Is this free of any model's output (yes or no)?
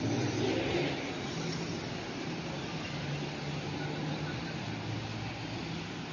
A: yes